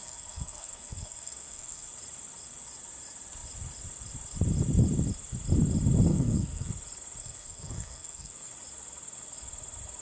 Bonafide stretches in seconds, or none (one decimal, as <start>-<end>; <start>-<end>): 1.9-6.1; 6.7-7.2; 8.5-10.0